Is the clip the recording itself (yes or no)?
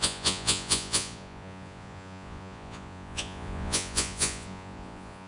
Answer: no